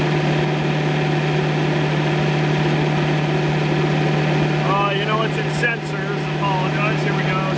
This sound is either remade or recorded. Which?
recorded